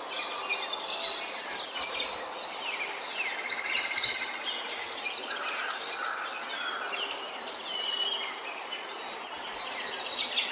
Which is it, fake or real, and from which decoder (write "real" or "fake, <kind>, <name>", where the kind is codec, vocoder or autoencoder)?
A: real